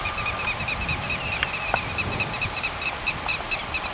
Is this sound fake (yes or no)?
yes